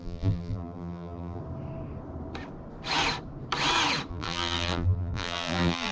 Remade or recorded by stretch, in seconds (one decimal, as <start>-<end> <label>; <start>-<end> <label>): 0.0-1.4 remade; 1.4-4.1 recorded; 4.1-5.9 remade